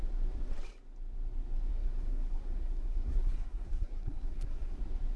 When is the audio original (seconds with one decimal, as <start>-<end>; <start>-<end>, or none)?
0.0-1.7; 4.8-5.2